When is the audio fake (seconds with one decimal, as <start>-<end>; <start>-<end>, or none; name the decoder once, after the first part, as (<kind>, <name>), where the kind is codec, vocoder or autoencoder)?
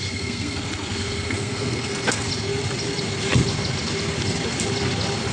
0.0-2.3 (codec, SNAC)